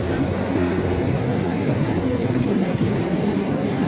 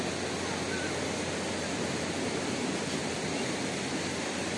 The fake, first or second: first